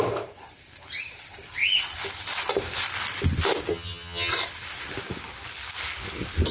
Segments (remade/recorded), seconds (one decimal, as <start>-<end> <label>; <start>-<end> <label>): 0.0-3.7 recorded; 3.7-4.3 remade; 4.3-6.5 recorded